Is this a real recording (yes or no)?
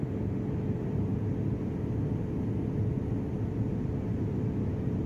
yes